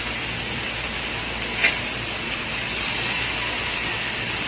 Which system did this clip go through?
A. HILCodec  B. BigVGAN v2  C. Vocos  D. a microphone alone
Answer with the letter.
D